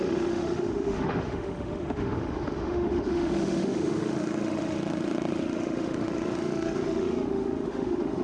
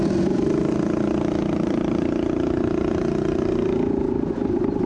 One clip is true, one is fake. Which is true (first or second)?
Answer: second